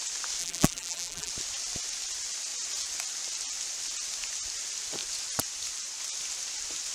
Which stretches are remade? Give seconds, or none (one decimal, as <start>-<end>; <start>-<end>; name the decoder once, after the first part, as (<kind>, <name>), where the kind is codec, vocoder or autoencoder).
0.4-1.3 (vocoder, BigVGAN v2)